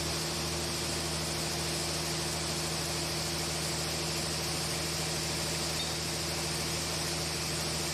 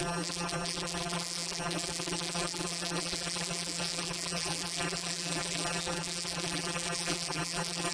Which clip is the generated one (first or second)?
second